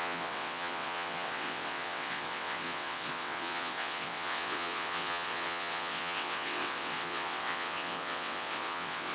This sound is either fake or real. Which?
fake